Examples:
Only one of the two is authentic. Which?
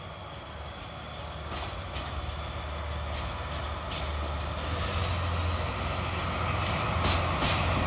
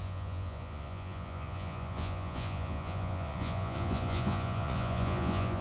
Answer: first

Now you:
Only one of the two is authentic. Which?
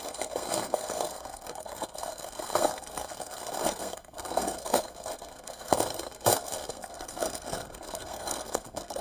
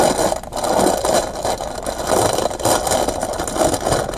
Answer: second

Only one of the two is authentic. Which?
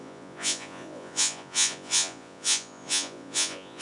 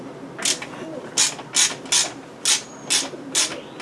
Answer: second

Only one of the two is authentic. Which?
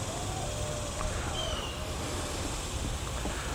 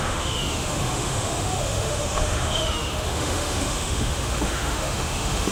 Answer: first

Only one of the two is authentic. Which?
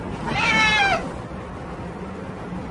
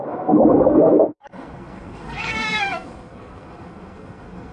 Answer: first